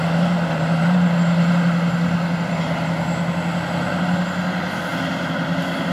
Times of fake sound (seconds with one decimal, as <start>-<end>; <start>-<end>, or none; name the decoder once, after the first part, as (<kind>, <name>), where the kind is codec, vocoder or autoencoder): none